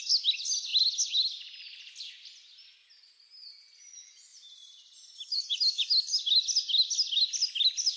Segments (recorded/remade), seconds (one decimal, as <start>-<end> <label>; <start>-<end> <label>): 0.0-4.3 recorded; 4.3-5.6 remade; 5.6-8.0 recorded